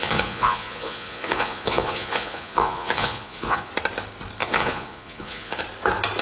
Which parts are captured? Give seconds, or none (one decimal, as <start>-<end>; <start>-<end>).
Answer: 3.7-4.4; 5.6-6.2